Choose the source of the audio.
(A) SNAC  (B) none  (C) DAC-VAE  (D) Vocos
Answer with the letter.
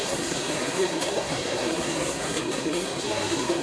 A